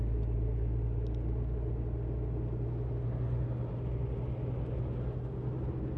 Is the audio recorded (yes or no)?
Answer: yes